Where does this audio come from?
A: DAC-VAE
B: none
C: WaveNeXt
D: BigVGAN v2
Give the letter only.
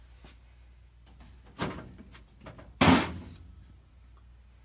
B